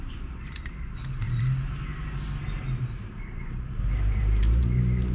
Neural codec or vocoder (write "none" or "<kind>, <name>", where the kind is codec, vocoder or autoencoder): vocoder, BigVGAN v2